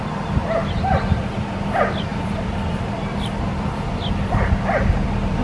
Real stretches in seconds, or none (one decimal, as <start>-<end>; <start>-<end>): 0.0-0.4; 1.7-2.1